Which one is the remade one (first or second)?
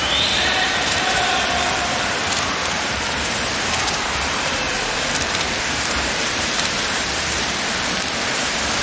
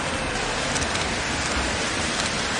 first